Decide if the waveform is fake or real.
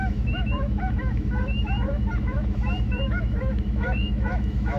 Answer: fake